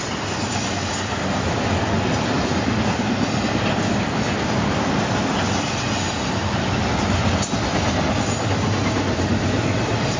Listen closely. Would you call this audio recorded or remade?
recorded